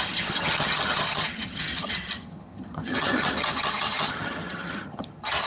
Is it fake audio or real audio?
fake